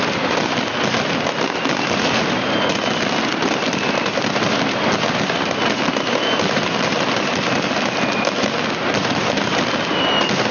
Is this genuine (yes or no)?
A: yes